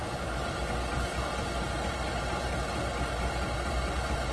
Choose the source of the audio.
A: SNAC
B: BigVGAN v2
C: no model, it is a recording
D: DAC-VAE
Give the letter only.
C